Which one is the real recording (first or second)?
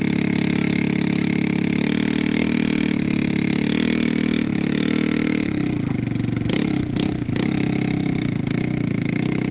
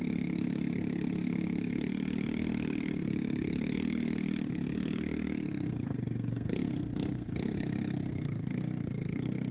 first